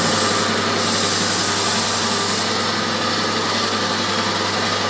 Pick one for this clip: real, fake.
real